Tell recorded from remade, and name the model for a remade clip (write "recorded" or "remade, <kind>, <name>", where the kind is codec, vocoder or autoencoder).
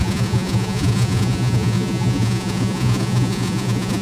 remade, vocoder, Vocos